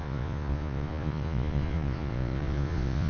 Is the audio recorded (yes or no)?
no